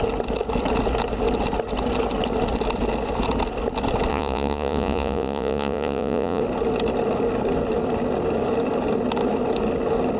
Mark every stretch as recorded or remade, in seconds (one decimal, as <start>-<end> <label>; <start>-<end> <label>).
0.0-4.1 recorded; 4.1-6.4 remade; 6.4-10.2 recorded